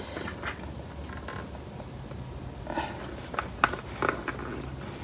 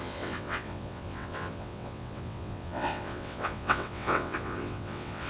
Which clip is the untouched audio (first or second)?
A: first